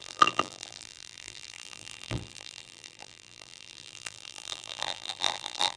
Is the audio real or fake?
fake